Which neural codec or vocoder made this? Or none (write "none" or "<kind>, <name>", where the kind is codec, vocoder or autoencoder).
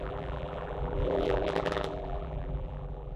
vocoder, BigVGAN v2